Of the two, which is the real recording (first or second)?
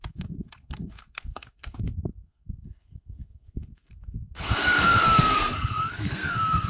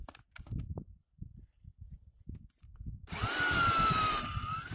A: second